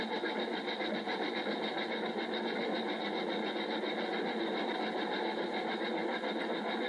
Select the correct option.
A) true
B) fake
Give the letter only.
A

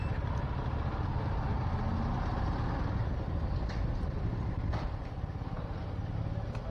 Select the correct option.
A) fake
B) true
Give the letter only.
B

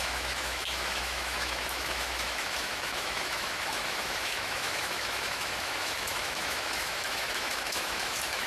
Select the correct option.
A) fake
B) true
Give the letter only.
A